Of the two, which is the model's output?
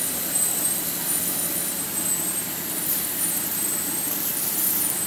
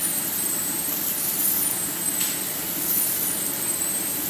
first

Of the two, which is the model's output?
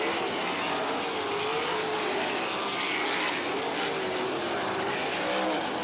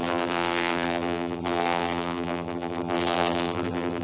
second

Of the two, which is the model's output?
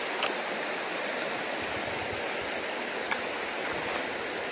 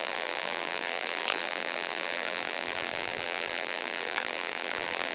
second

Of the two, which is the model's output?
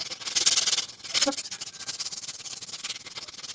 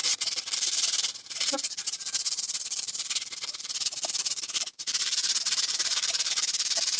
second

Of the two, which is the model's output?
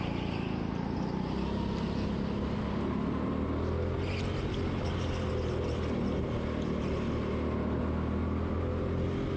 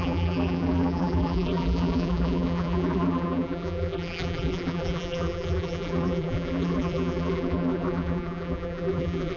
second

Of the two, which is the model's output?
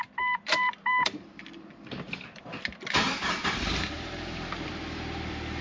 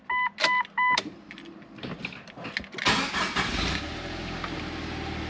first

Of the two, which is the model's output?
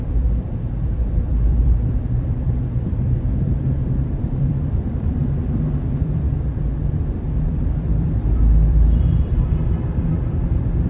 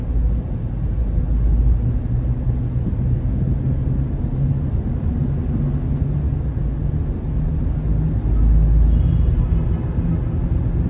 first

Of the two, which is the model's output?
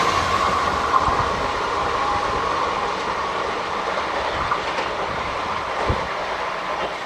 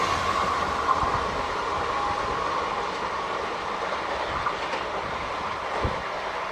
first